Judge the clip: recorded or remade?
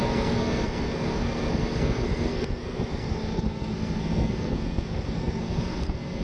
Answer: remade